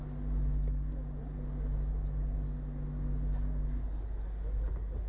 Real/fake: real